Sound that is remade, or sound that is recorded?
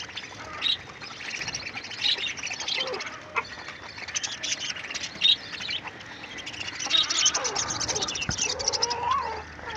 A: recorded